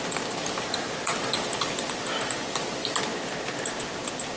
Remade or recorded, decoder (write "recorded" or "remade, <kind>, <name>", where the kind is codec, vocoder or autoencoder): recorded